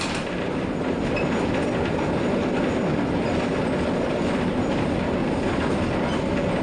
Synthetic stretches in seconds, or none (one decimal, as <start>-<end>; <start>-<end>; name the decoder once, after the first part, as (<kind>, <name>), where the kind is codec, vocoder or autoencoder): none